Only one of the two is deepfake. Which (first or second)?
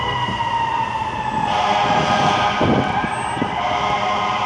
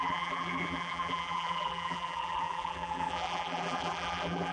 second